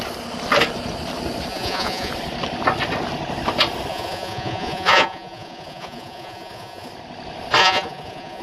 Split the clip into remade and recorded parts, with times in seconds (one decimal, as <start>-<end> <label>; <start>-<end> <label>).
0.0-1.5 recorded; 1.5-2.1 remade; 2.1-3.9 recorded; 3.9-6.9 remade; 6.9-7.6 recorded; 7.6-8.4 remade